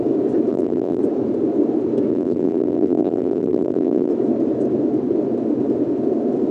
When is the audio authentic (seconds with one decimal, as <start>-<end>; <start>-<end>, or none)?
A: 0.0-0.5; 1.0-2.1; 4.1-6.5